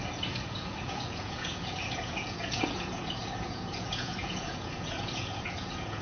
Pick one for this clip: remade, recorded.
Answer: remade